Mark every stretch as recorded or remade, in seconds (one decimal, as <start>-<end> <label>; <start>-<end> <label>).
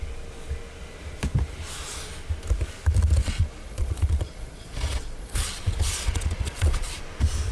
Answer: 0.0-3.2 recorded; 3.2-7.0 remade; 7.0-7.5 recorded